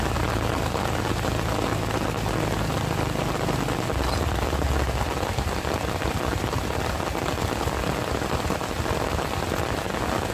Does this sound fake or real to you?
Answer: real